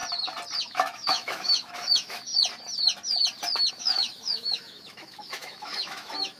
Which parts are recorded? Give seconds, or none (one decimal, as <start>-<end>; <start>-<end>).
0.0-0.6; 2.3-3.7